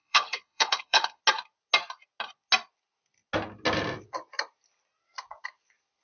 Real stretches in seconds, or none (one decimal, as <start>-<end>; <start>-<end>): 1.2-6.0